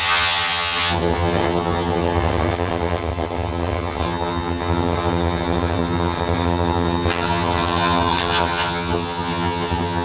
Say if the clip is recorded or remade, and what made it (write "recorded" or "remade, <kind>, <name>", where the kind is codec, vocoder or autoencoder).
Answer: remade, vocoder, HiFi-GAN